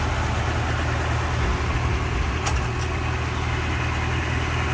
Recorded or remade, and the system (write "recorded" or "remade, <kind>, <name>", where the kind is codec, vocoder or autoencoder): recorded